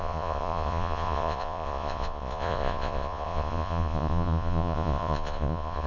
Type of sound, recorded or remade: remade